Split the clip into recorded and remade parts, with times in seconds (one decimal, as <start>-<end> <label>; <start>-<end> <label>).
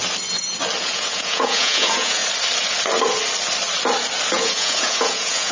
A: 0.0-0.8 recorded; 0.8-2.2 remade; 2.2-4.3 recorded; 4.3-5.5 remade